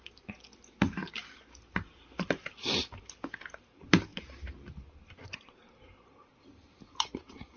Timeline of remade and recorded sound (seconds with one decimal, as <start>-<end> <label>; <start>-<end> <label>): 0.0-4.1 recorded; 4.1-7.6 remade